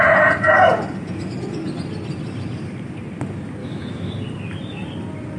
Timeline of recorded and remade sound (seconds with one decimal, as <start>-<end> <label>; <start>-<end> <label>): 0.0-3.6 recorded; 3.6-4.1 remade; 4.1-5.4 recorded